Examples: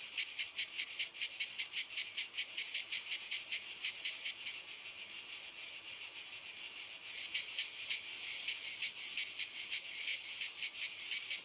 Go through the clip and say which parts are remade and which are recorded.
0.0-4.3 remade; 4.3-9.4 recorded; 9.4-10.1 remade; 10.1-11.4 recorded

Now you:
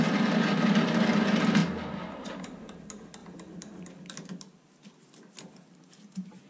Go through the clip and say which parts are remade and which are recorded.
0.0-6.5 recorded

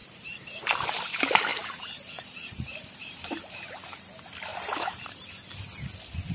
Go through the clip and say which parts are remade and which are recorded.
0.0-0.9 remade; 0.9-1.5 recorded; 1.5-4.1 remade; 4.1-4.5 recorded; 4.5-5.0 remade; 5.0-6.3 recorded

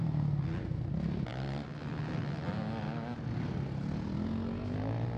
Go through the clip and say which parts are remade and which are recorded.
0.0-5.2 recorded

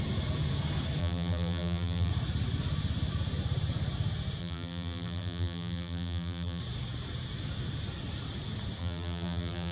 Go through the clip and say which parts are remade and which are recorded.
0.0-1.0 recorded; 1.0-2.1 remade; 2.1-4.4 recorded; 4.4-6.6 remade; 6.6-8.8 recorded; 8.8-9.7 remade

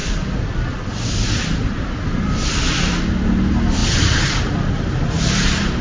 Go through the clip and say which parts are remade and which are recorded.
0.0-3.8 recorded; 3.8-4.4 remade; 4.4-5.8 recorded